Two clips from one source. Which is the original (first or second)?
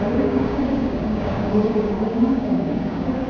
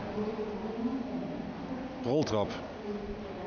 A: second